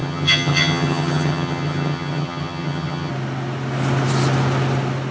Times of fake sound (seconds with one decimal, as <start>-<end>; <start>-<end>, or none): 0.0-3.1